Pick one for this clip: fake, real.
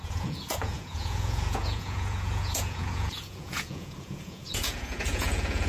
fake